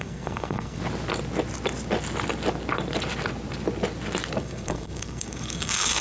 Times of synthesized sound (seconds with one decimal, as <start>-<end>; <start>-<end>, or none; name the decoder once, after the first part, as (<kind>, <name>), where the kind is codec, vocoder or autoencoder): 0.0-0.8 (codec, SNAC); 4.4-6.0